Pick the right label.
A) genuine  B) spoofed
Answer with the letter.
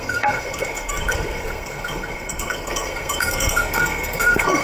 B